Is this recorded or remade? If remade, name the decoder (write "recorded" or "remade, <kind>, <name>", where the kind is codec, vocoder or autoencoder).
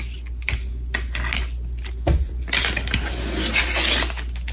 recorded